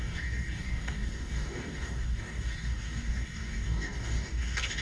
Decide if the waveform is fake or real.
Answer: fake